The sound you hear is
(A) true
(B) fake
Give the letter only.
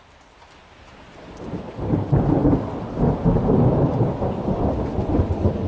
A